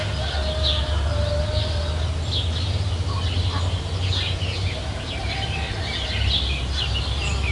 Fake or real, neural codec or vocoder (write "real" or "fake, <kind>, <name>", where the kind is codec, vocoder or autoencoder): real